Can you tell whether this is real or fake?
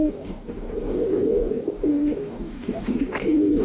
fake